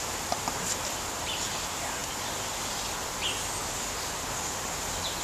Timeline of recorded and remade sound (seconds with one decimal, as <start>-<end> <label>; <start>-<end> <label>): 0.0-5.2 recorded